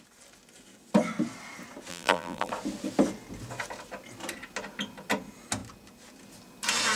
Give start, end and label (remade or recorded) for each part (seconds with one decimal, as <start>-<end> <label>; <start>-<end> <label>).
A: 0.0-1.9 recorded; 1.9-2.5 remade; 2.5-7.0 recorded